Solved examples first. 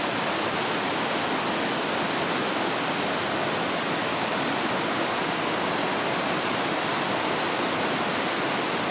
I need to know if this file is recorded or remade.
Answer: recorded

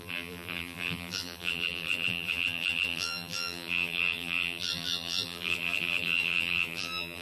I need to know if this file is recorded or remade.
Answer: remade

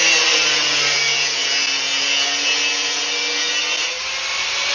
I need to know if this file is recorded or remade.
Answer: recorded